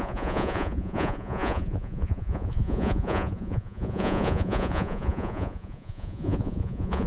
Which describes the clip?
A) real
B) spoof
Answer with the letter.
B